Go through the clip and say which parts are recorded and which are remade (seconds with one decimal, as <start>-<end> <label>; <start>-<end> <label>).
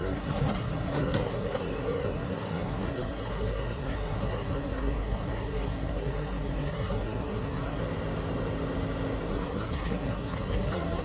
0.0-7.8 remade; 7.8-9.3 recorded; 9.3-11.0 remade